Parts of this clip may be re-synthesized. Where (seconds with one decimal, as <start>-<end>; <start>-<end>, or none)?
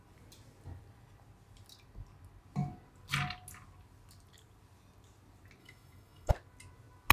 5.6-6.3